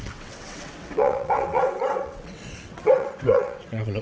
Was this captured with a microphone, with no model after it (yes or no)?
no